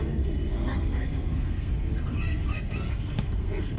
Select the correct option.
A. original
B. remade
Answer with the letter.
B